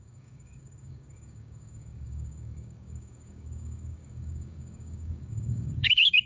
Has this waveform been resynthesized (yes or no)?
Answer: yes